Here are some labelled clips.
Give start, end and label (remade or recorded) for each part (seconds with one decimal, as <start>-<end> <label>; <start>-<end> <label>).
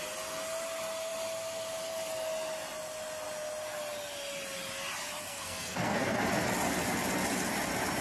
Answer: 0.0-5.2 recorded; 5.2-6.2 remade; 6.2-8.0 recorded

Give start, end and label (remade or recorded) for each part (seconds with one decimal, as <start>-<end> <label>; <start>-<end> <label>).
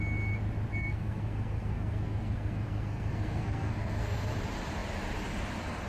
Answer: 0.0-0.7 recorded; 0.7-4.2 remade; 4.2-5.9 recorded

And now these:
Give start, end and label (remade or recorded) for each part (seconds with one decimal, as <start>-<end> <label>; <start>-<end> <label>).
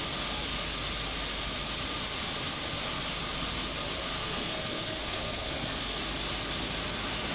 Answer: 0.0-4.2 recorded; 4.2-6.0 remade; 6.0-7.3 recorded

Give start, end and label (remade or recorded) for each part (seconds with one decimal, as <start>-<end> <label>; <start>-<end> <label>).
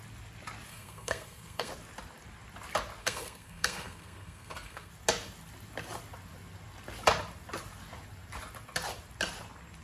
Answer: 0.0-0.7 recorded; 0.7-1.7 remade; 1.7-3.0 recorded; 3.0-4.9 remade; 4.9-9.8 recorded